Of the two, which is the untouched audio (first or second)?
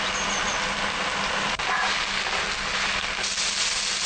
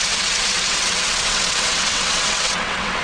first